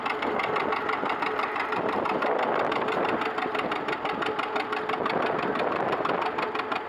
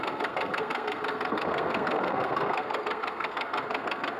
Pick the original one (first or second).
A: first